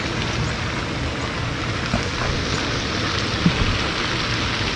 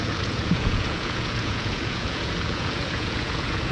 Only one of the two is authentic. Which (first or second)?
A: first